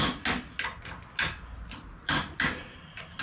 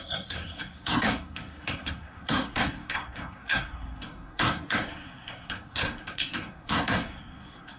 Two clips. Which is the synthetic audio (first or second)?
second